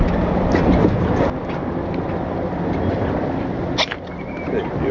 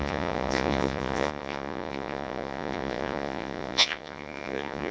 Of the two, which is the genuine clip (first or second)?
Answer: first